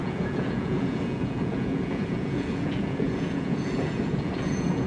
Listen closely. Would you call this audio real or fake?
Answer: fake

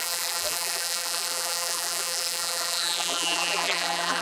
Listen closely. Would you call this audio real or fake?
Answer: fake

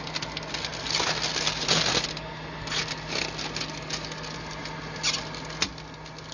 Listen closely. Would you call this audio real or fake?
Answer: real